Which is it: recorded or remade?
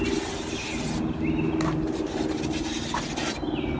recorded